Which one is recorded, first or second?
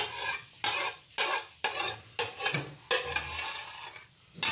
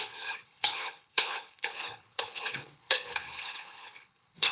first